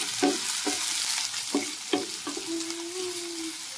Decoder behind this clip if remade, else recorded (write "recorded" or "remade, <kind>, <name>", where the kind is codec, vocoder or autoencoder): recorded